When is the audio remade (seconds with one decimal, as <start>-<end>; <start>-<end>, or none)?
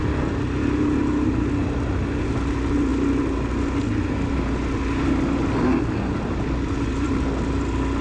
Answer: none